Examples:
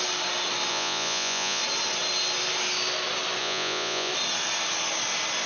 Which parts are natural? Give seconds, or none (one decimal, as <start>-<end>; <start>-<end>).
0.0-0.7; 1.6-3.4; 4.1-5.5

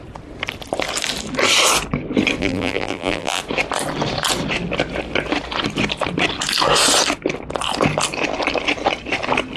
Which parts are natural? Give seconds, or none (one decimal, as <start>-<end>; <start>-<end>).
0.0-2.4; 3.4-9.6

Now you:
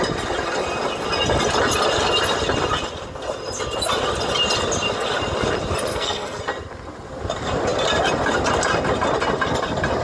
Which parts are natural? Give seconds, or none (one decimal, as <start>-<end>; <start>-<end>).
0.0-5.9; 6.4-10.0

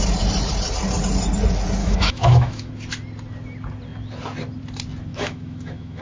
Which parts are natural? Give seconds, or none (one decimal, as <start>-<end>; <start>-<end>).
0.0-1.8; 2.7-5.1